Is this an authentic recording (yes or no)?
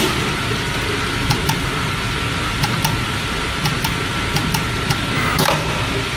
yes